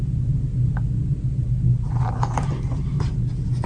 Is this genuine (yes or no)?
yes